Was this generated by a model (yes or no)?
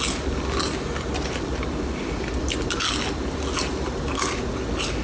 no